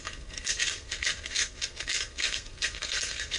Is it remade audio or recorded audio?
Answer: remade